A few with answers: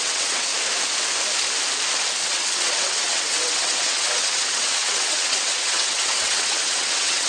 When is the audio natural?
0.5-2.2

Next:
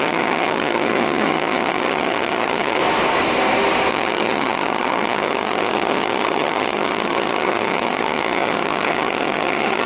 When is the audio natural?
2.8-3.9